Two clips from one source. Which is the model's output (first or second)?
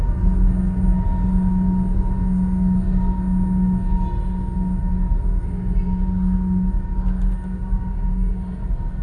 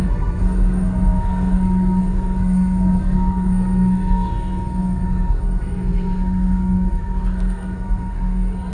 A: second